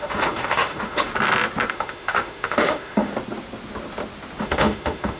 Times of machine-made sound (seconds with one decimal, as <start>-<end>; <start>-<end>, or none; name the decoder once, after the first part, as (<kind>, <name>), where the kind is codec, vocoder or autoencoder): 0.0-1.1 (autoencoder, DAC-VAE); 1.7-3.1; 4.4-5.2